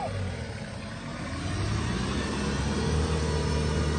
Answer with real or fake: real